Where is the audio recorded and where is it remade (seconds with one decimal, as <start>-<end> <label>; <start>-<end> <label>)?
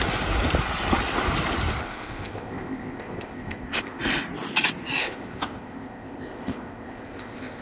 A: 0.0-1.8 recorded; 1.8-4.0 remade; 4.0-5.0 recorded; 5.0-7.6 remade